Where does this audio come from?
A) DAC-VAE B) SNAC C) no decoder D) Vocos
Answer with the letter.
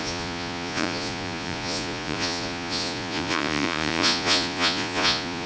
D